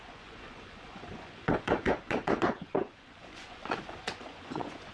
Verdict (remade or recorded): remade